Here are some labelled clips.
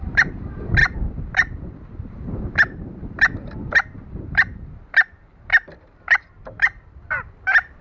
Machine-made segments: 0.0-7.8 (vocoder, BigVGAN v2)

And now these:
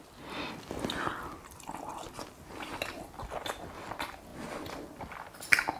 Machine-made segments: none

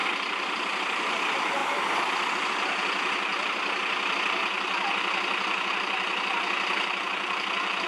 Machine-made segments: 1.2-3.3 (vocoder, BigVGAN v2); 5.7-7.9

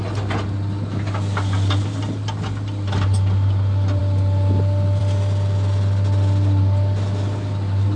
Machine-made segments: none

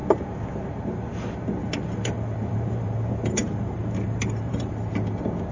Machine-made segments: 1.6-4.9 (vocoder, BigVGAN v2)

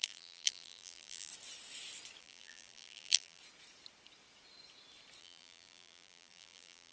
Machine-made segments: 0.0-1.3 (vocoder, BigVGAN v2); 2.2-3.4; 5.2-6.9

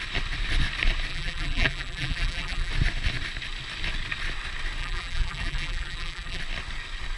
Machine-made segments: 1.1-2.7 (vocoder, BigVGAN v2); 4.8-6.4